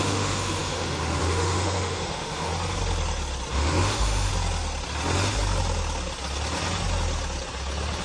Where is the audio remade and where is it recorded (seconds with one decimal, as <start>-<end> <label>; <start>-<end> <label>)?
0.0-2.5 remade; 2.5-3.5 recorded; 3.5-4.3 remade; 4.3-8.0 recorded